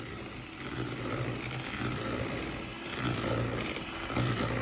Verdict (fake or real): fake